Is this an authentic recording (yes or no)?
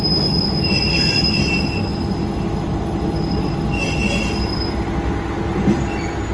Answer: yes